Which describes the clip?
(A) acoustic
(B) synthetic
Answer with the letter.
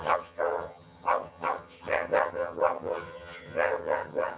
B